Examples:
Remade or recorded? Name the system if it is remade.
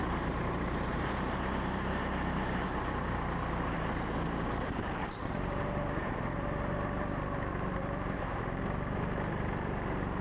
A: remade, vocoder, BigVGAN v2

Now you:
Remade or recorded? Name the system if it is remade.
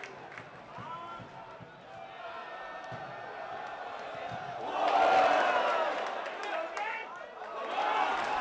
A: recorded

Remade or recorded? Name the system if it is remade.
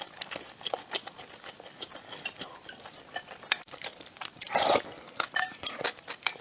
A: remade, vocoder, BigVGAN v2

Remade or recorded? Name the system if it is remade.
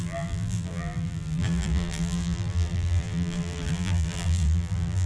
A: remade, vocoder, BigVGAN v2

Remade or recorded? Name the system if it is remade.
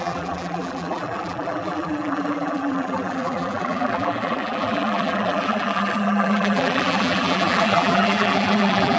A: remade, vocoder, BigVGAN v2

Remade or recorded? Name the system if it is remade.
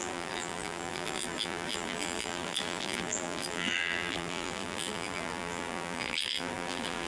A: remade, vocoder, BigVGAN v2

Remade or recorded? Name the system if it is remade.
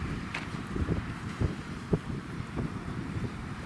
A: remade, vocoder, BigVGAN v2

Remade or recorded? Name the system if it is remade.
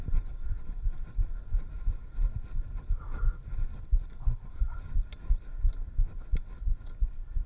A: recorded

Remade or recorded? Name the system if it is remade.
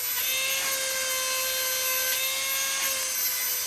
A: recorded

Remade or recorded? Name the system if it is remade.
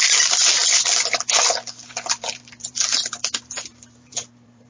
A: remade, vocoder, BigVGAN v2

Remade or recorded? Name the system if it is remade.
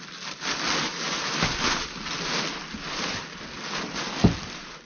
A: recorded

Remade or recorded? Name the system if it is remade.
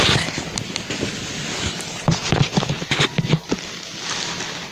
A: recorded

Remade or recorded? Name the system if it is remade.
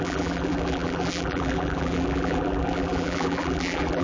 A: remade, vocoder, BigVGAN v2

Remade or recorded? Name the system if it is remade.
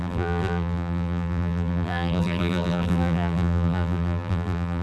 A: remade, vocoder, BigVGAN v2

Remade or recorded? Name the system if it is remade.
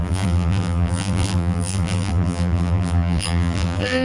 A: remade, vocoder, BigVGAN v2